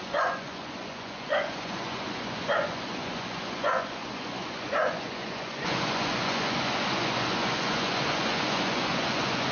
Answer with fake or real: fake